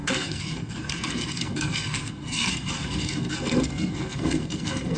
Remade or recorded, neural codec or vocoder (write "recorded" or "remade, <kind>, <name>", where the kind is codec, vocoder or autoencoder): remade, codec, SNAC